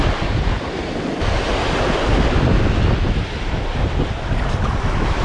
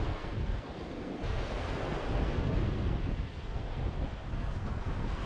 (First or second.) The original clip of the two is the first